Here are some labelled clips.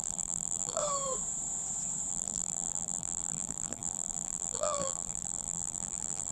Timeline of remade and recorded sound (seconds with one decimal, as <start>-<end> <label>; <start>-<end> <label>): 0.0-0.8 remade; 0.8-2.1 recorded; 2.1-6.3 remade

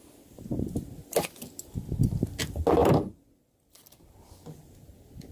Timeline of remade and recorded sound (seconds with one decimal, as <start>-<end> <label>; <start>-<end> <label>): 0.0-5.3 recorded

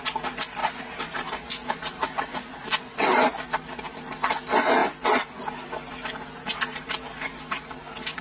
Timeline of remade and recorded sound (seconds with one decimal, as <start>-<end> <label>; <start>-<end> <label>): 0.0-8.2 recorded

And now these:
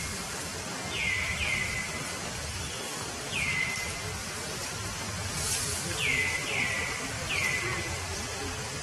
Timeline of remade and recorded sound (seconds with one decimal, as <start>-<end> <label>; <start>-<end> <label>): 0.0-8.8 recorded

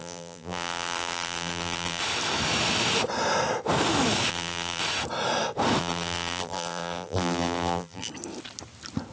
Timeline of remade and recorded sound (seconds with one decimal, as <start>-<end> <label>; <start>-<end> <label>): 0.0-2.0 remade; 2.0-4.3 recorded; 4.3-4.8 remade; 4.8-5.8 recorded; 5.8-8.1 remade; 8.1-9.1 recorded

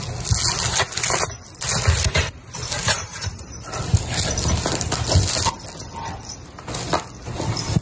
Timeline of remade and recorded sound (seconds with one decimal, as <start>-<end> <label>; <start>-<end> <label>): 0.0-2.8 recorded; 2.8-3.4 remade; 3.4-7.8 recorded

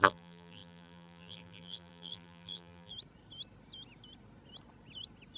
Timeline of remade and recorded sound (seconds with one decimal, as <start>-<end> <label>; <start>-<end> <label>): 0.0-2.9 remade; 2.9-5.4 recorded